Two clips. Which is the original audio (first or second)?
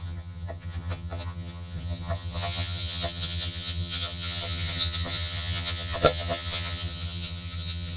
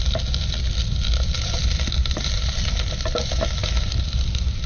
second